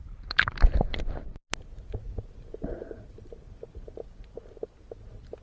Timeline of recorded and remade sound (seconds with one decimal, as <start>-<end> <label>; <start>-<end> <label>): 0.0-5.4 recorded